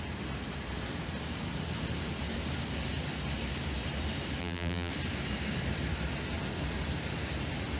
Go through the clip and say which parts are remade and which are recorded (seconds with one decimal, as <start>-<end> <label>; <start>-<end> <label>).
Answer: 0.0-4.4 recorded; 4.4-4.9 remade; 4.9-7.8 recorded